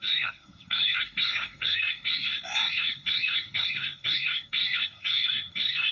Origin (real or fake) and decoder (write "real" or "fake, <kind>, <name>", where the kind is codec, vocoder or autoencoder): fake, codec, SNAC